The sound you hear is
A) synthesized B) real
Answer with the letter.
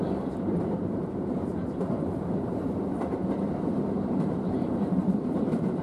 A